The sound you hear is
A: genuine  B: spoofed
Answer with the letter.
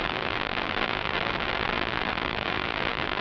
B